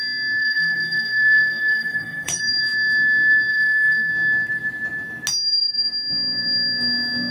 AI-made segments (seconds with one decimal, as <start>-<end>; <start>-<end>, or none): 0.4-2.4; 3.5-4.1